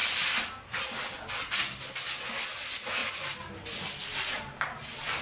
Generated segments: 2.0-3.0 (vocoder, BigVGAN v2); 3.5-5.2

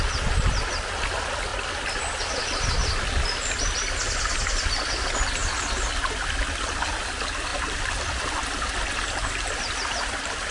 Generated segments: 7.5-8.2 (vocoder, BigVGAN v2)